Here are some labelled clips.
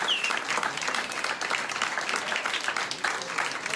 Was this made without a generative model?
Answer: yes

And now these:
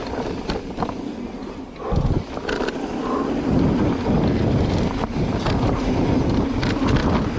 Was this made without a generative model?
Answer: yes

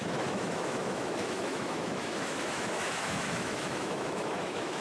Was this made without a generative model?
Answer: no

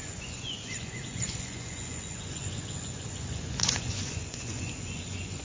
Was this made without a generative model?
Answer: no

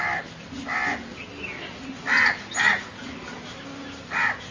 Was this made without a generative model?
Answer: yes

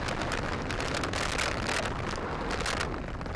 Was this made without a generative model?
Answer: yes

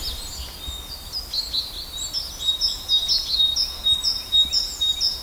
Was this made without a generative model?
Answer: yes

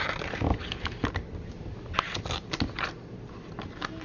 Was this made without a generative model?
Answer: yes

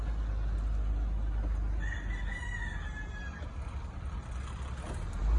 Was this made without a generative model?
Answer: yes